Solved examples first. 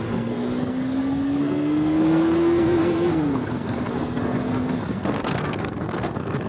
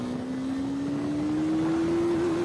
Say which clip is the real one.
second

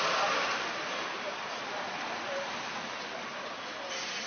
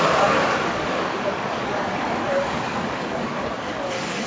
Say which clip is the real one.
first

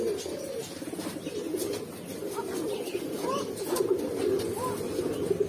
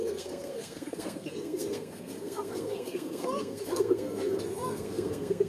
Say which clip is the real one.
first